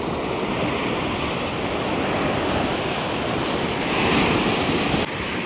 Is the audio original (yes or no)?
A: yes